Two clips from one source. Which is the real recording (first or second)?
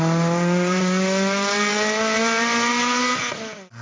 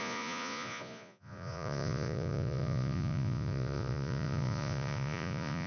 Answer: first